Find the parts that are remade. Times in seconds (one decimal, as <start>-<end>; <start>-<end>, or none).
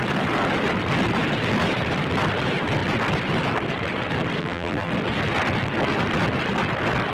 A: 4.4-4.9